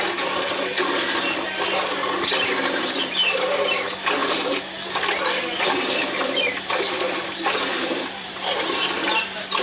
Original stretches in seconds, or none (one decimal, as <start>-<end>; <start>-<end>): 0.0-7.7; 9.1-9.6